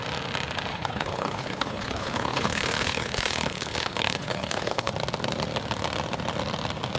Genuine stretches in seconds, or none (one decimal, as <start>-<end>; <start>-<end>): 0.0-0.7; 4.9-7.0